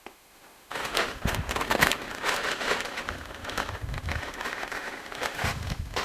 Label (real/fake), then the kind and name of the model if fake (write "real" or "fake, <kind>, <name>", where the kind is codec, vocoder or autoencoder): fake, autoencoder, DAC-VAE